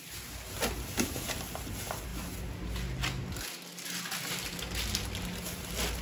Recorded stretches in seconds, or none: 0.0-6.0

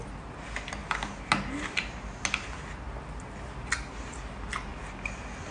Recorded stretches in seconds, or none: 0.0-5.5

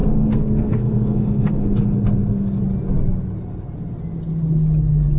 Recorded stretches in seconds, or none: 2.6-5.2

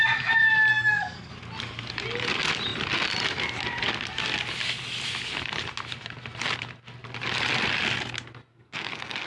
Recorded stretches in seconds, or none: 0.0-0.7; 1.3-8.5

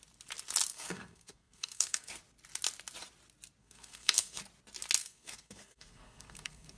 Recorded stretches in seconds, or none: 0.0-0.7; 2.2-3.6; 4.4-5.0